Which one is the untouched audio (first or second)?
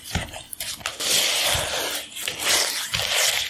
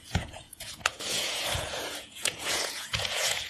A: first